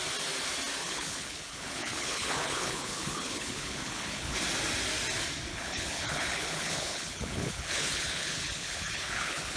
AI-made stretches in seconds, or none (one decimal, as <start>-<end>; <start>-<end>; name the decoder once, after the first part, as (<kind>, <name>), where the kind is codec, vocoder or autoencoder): 0.8-4.4 (codec, HILCodec); 5.5-9.6